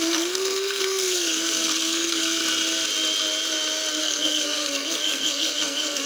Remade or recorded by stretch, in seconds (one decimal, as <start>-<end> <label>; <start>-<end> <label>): 0.0-2.4 remade; 2.4-4.0 recorded; 4.0-6.1 remade